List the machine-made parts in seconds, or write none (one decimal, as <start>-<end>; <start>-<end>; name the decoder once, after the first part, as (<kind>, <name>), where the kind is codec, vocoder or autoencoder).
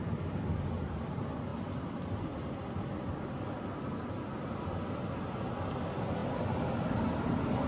1.5-3.3 (vocoder, BigVGAN v2)